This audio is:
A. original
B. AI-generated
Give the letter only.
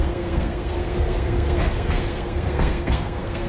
B